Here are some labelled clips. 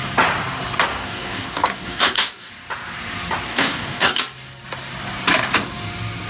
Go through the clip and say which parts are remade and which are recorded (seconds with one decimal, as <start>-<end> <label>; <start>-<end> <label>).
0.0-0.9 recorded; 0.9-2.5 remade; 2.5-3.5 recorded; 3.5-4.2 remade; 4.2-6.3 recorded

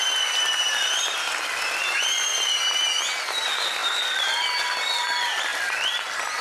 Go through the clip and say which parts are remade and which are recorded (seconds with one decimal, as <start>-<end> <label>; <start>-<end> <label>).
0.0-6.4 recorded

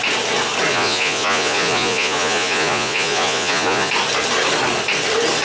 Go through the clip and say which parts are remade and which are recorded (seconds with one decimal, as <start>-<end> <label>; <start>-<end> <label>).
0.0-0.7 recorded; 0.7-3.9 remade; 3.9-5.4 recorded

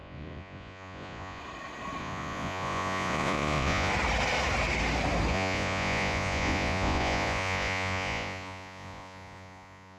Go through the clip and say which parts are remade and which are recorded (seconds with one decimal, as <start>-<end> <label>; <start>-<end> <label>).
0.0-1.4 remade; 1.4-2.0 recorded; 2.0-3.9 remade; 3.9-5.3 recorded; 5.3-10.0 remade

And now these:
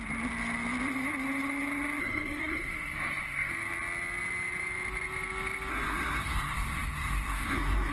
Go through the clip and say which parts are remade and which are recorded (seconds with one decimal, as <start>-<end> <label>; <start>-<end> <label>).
0.0-2.0 recorded; 2.0-3.5 remade; 3.5-5.7 recorded; 5.7-7.9 remade